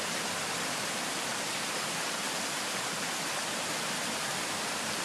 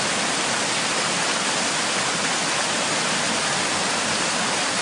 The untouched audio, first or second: second